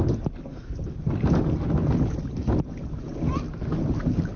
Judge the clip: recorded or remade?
recorded